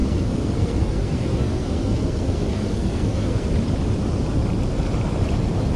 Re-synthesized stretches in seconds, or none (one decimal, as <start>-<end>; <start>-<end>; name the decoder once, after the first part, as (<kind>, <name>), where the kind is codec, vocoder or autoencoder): 0.0-3.5 (codec, SNAC)